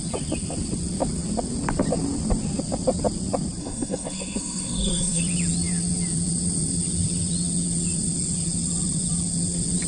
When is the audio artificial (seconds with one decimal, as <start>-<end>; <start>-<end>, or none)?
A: 3.6-5.2